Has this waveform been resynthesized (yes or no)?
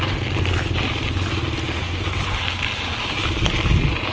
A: no